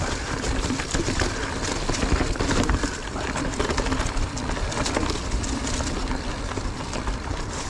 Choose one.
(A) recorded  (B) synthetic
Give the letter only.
B